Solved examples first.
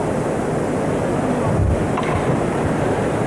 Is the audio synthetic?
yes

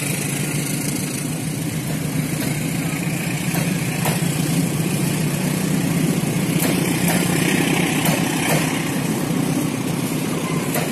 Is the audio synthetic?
yes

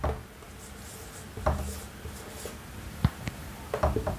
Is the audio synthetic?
no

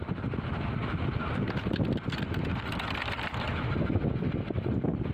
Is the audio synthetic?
no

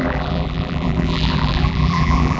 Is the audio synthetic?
yes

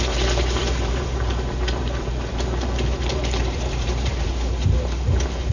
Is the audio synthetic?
yes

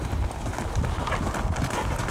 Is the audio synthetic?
no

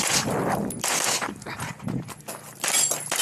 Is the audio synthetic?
no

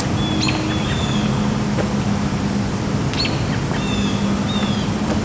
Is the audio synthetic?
no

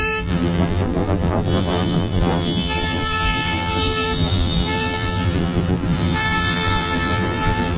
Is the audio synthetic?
yes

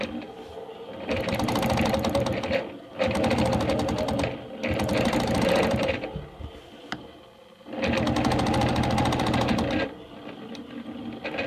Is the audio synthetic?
no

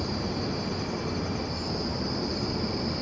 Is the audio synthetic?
yes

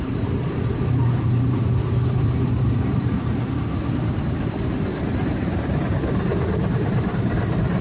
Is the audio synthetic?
yes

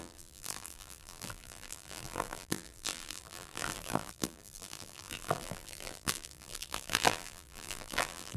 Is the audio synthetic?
yes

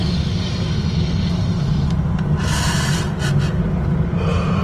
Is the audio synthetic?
no